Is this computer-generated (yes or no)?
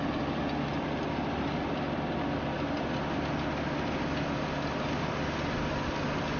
no